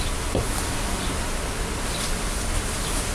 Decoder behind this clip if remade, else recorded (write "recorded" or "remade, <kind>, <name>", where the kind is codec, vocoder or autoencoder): recorded